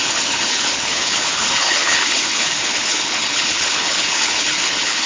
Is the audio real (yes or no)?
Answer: no